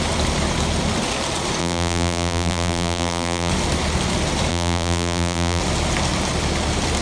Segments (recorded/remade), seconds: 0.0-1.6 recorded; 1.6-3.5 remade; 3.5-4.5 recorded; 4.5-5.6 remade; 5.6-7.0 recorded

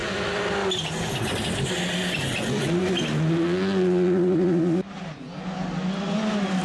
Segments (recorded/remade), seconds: 0.0-6.6 recorded

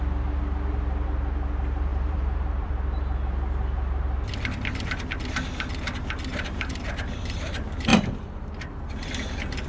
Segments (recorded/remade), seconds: 0.0-1.9 recorded; 1.9-2.7 remade; 2.7-6.3 recorded; 6.3-6.9 remade; 6.9-7.9 recorded; 7.9-8.5 remade; 8.5-9.7 recorded

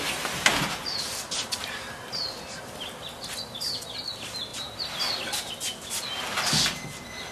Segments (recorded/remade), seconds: 0.0-0.5 recorded; 0.5-2.6 remade; 2.6-7.3 recorded

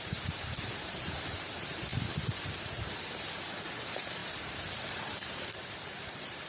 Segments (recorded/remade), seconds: 0.0-6.5 remade